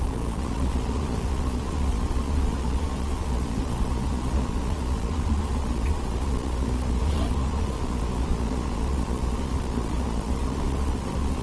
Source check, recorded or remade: remade